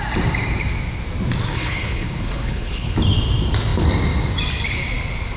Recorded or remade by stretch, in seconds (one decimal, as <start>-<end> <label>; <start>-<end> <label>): 0.0-1.5 recorded; 1.5-2.9 remade; 2.9-5.4 recorded